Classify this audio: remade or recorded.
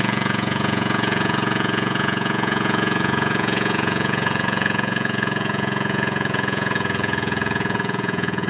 remade